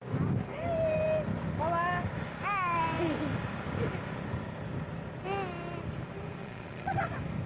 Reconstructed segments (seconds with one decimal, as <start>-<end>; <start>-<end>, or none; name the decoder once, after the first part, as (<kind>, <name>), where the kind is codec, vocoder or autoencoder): 6.4-7.0 (vocoder, Vocos)